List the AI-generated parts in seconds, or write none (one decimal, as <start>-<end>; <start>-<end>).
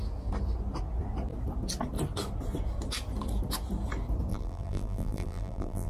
4.3-5.9